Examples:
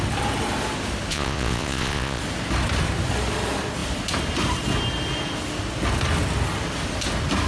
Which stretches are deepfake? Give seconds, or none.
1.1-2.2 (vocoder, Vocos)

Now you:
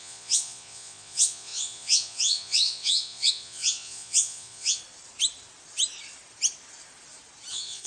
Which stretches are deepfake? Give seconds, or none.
0.0-4.8 (vocoder, Vocos); 7.5-7.9

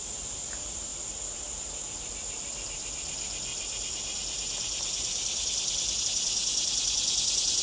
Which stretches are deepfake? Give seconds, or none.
none

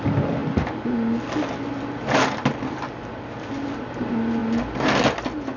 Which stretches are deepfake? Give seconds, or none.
none

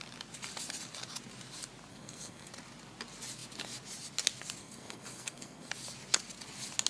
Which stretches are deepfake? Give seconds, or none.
1.9-2.5 (codec, SNAC); 4.6-5.7

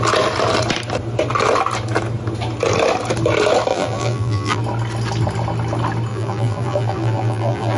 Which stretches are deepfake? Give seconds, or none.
3.7-4.6 (vocoder, BigVGAN v2); 6.1-7.8

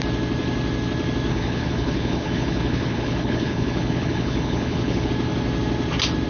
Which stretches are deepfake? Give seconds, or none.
1.3-5.1 (codec, HILCodec)